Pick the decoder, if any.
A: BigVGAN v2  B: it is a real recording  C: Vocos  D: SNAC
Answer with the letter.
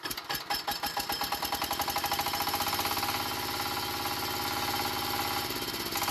B